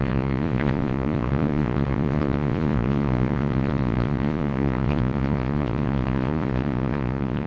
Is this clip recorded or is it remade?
remade